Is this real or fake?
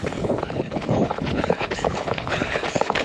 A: fake